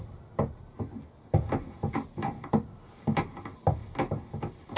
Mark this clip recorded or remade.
recorded